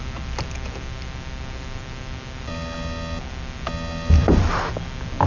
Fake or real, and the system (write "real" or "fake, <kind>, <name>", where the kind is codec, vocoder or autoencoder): real